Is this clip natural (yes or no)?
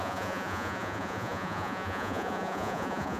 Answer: no